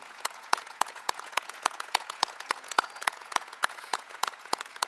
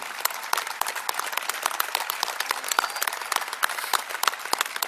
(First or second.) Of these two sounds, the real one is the second